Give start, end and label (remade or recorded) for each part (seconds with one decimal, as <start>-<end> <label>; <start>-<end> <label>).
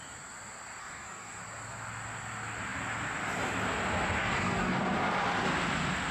0.0-0.8 recorded; 0.8-1.4 remade; 1.4-4.2 recorded; 4.2-4.8 remade; 4.8-6.1 recorded